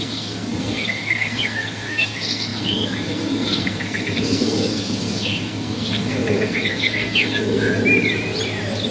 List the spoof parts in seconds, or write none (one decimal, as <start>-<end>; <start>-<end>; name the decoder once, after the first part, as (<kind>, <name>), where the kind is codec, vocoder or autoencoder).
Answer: 0.0-7.8 (codec, SNAC)